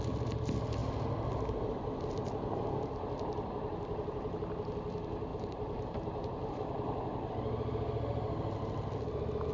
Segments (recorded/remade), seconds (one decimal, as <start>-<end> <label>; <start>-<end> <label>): 0.0-5.3 recorded; 5.3-7.3 remade; 7.3-9.5 recorded